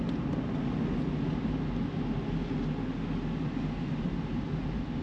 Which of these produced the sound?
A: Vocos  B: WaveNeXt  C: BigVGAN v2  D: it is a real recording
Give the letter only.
D